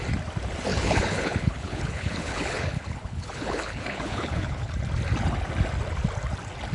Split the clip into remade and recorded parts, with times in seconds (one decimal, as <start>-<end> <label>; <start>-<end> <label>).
0.0-0.7 recorded; 0.7-4.7 remade; 4.7-6.7 recorded